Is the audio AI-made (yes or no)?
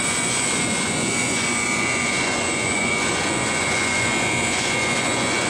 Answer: yes